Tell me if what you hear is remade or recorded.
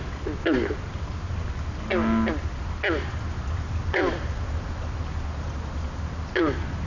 recorded